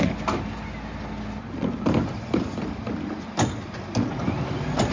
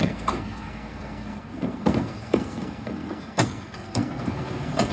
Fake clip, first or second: second